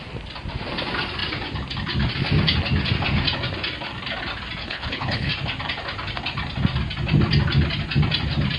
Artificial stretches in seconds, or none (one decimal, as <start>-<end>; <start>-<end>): 4.6-5.3